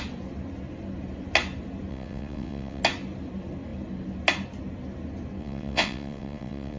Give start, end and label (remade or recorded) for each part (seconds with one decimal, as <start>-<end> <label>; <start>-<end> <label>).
0.0-1.9 recorded; 1.9-2.8 remade; 2.8-5.4 recorded; 5.4-6.8 remade